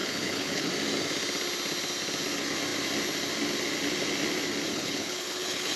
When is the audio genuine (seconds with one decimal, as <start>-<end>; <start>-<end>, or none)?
0.7-4.7